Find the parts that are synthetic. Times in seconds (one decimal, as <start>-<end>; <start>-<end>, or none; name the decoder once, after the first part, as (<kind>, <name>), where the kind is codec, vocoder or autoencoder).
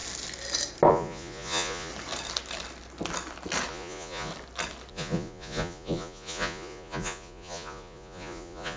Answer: 0.9-1.9 (vocoder, Vocos); 3.7-4.3; 4.9-8.8